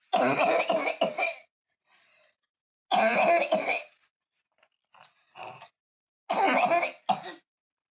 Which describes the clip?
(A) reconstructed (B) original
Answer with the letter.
B